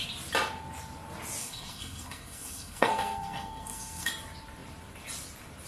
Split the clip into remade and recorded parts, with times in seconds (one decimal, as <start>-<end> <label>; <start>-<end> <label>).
0.0-1.4 recorded; 1.4-4.1 remade; 4.1-5.7 recorded

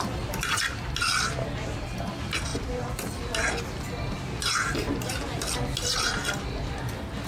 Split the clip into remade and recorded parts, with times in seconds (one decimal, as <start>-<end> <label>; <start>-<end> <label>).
0.0-7.3 recorded